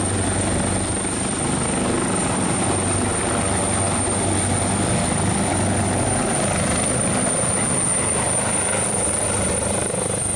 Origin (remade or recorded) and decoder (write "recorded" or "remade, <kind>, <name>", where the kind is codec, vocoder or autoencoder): recorded